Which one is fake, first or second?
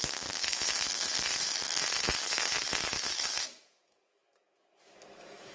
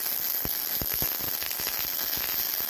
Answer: first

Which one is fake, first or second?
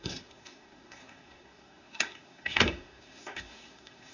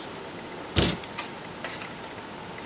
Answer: first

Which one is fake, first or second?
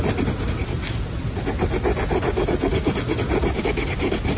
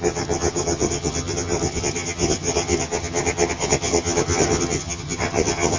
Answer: second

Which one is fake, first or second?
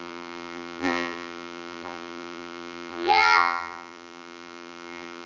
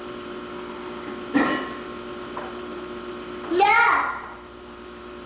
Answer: first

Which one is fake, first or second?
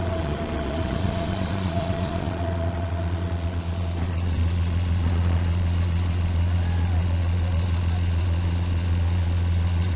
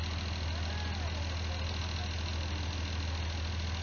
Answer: first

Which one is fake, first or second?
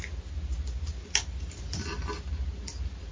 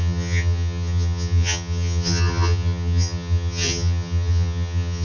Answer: second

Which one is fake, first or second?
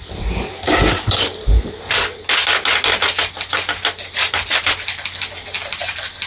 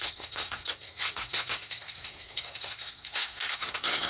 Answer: second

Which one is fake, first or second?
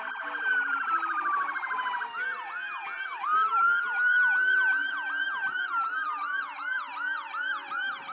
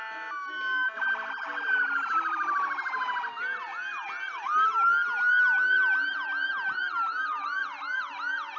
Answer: first